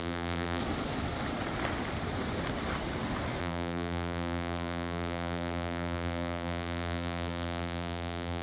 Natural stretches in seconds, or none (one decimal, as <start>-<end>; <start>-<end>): 0.6-3.4